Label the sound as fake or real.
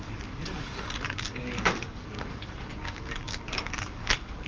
fake